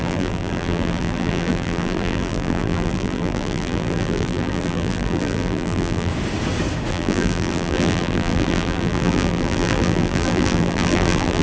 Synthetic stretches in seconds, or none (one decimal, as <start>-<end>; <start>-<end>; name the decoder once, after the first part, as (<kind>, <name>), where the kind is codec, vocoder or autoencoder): 0.0-6.1 (vocoder, BigVGAN v2); 6.9-11.4